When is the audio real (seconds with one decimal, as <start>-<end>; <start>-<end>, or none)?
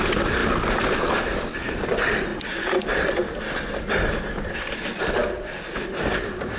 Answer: 0.0-6.6